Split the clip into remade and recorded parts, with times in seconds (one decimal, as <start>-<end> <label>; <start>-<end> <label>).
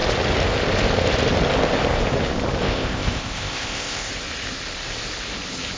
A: 0.0-2.6 recorded; 2.6-4.1 remade; 4.1-5.8 recorded